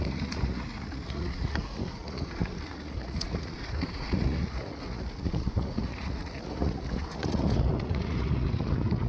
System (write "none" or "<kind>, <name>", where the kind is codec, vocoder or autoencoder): vocoder, Vocos